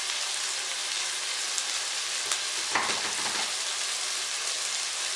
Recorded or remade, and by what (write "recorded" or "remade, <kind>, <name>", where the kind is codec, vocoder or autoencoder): recorded